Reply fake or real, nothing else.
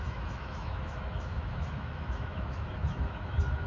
fake